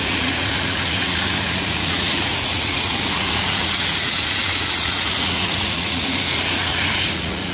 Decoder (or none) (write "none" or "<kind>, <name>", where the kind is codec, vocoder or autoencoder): vocoder, Vocos